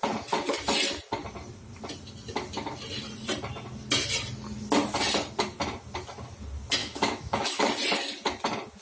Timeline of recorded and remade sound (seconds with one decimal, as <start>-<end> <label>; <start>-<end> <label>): 0.0-6.8 recorded; 6.8-7.6 remade; 7.6-8.8 recorded